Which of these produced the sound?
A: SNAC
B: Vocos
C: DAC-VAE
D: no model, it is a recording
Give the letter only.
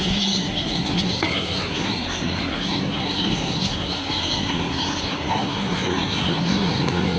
A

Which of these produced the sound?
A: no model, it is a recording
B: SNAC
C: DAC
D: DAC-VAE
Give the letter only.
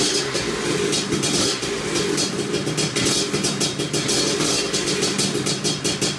A